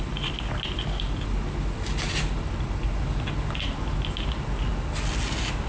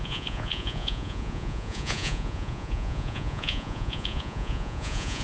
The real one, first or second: first